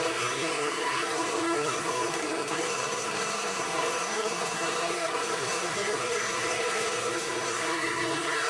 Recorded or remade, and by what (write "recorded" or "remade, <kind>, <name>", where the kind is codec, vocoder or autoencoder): remade, codec, SNAC